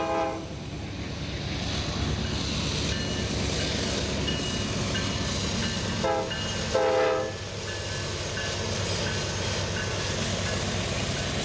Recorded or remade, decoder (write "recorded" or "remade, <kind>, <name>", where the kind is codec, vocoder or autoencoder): recorded